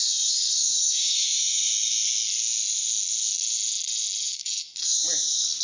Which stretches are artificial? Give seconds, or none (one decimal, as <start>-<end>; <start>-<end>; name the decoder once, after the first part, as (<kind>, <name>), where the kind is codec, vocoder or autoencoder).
0.6-1.6 (autoencoder, DAC-VAE); 4.2-5.0